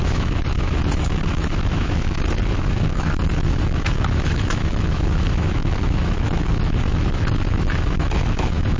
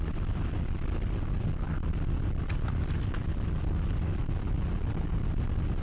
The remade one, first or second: first